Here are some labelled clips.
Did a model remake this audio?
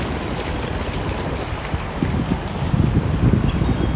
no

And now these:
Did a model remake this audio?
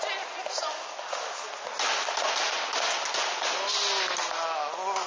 no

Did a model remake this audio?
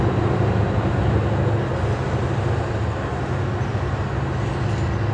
no